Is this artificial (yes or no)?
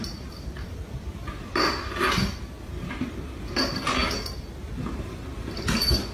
no